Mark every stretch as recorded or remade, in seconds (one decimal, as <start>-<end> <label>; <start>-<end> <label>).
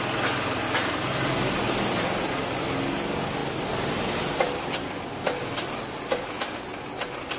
0.0-7.4 recorded